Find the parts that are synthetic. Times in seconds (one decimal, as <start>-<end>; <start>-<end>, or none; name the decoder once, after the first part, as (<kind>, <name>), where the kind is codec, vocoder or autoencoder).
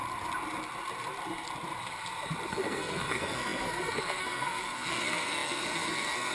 2.5-6.3 (codec, SNAC)